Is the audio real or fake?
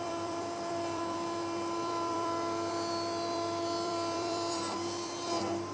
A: fake